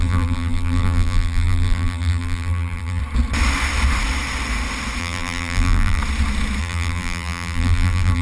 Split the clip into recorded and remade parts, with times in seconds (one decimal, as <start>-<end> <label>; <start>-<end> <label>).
0.0-3.0 remade; 3.0-5.0 recorded; 5.0-6.0 remade; 6.0-6.6 recorded; 6.6-8.2 remade